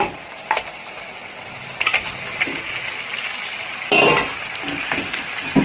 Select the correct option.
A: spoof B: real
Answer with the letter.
B